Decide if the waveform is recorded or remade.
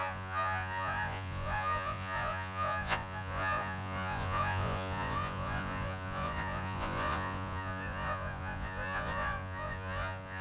remade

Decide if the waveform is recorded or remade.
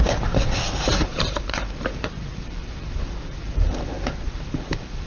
remade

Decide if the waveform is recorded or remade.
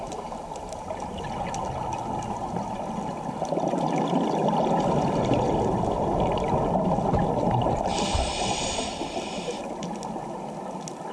recorded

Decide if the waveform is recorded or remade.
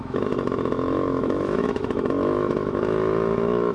remade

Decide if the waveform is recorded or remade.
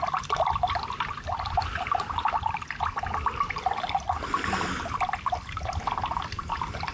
recorded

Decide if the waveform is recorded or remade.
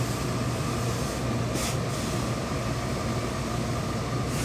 recorded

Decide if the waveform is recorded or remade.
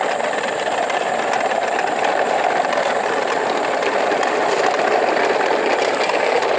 recorded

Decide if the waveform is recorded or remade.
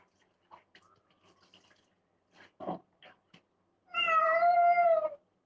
recorded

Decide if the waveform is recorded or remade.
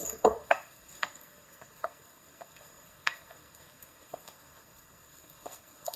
remade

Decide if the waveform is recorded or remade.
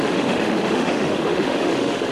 remade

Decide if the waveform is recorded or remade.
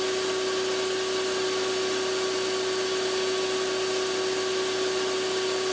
recorded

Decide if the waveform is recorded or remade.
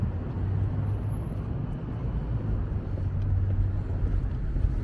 recorded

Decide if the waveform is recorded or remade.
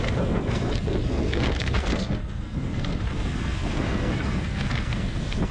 remade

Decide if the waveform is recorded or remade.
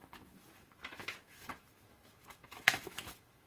remade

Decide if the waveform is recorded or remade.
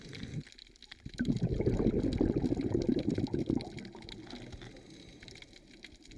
recorded